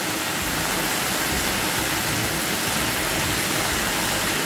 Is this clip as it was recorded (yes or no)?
yes